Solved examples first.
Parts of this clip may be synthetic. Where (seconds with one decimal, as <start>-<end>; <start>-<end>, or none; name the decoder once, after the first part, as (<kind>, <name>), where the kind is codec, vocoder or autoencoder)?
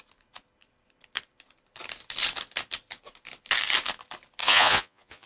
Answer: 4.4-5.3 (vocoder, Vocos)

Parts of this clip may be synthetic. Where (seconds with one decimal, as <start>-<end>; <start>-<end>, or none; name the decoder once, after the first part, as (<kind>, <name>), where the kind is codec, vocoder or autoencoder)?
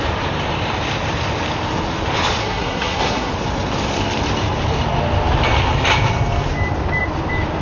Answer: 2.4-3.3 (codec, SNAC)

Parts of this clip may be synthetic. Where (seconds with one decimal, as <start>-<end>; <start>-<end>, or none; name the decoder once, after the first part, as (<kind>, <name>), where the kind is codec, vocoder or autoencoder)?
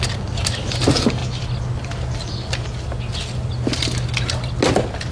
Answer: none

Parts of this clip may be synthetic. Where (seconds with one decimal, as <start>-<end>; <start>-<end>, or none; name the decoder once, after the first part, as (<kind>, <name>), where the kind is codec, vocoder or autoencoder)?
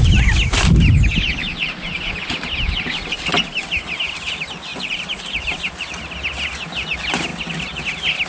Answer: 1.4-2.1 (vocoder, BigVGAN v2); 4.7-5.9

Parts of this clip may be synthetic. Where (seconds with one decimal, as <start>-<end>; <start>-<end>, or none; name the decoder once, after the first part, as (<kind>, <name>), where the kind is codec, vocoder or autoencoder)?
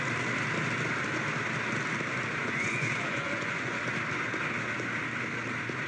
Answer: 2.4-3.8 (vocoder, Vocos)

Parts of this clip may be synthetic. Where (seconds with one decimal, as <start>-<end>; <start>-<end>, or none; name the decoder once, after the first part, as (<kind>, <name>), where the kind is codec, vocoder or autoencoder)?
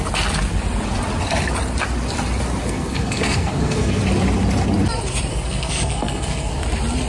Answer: 2.6-4.0 (codec, SNAC); 5.3-6.6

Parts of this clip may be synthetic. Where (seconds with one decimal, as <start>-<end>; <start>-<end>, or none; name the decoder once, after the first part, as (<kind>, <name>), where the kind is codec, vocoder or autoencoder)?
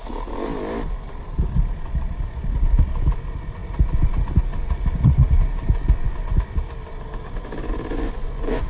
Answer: 7.9-8.7 (vocoder, Vocos)